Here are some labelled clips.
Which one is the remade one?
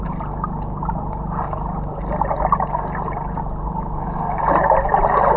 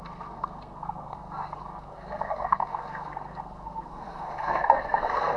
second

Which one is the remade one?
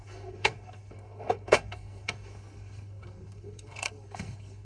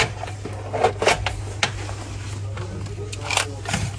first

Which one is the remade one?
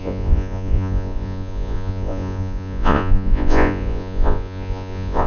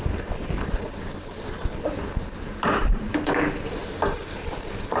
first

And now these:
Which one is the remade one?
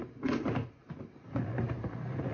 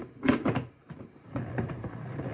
second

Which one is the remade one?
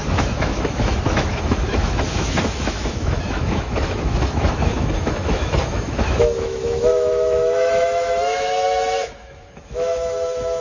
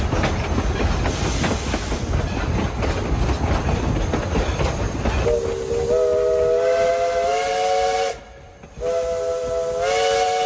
first